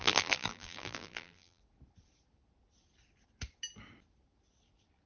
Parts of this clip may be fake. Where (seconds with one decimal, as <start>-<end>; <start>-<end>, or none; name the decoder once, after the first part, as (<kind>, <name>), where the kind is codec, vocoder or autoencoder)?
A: 0.0-1.6 (vocoder, BigVGAN v2)